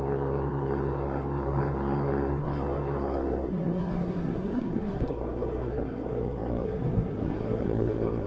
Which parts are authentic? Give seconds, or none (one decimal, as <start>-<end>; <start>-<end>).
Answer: none